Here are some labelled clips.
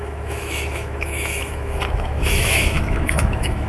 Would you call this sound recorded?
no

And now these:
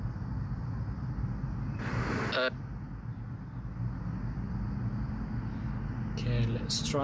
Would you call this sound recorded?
yes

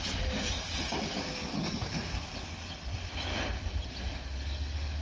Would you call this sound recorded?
yes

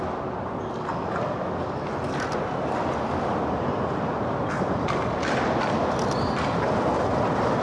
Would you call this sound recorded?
yes